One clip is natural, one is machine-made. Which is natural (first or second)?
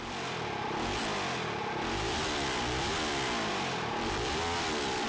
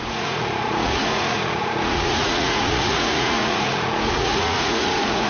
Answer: first